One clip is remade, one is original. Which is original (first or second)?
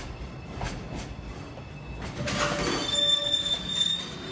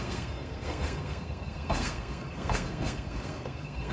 first